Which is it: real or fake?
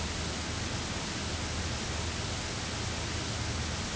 real